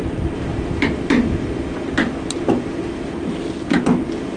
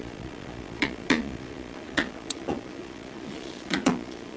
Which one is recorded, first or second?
first